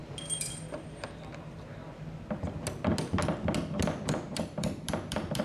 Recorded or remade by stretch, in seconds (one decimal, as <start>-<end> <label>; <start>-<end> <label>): 0.0-4.3 recorded; 4.3-5.4 remade